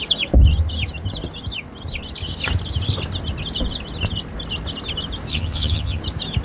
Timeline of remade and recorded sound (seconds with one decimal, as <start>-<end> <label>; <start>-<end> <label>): 0.0-5.3 recorded; 5.3-6.0 remade; 6.0-6.4 recorded